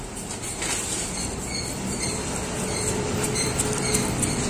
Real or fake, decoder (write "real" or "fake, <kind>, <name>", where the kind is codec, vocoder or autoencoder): real